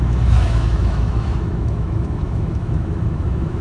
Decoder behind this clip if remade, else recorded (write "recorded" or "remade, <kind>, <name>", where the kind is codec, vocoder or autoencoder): remade, autoencoder, DAC-VAE